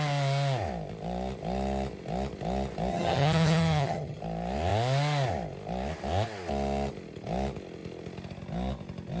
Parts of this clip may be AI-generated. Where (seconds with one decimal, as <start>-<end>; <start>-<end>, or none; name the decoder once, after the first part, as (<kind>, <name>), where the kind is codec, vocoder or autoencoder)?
2.9-4.2 (vocoder, HiFi-GAN)